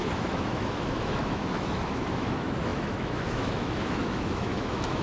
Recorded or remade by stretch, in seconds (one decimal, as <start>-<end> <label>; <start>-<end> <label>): 0.0-5.0 remade

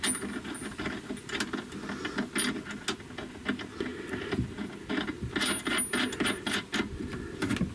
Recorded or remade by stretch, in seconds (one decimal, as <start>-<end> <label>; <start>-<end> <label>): 0.0-7.7 recorded

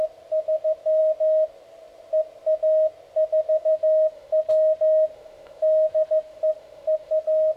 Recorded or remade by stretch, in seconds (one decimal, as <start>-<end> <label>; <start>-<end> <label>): 0.0-3.7 recorded; 3.7-7.1 remade; 7.1-7.6 recorded

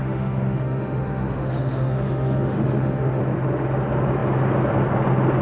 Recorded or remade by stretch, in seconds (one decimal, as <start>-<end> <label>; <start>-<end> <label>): 0.0-3.2 remade; 3.2-5.4 recorded

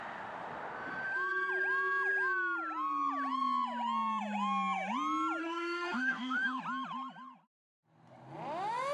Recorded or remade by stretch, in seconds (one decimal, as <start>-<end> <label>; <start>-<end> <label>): 0.0-5.4 recorded; 5.4-6.6 remade; 6.6-8.9 recorded

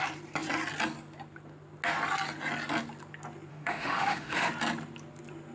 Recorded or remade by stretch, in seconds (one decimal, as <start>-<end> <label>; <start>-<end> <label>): 0.0-3.5 recorded; 3.5-4.5 remade; 4.5-5.5 recorded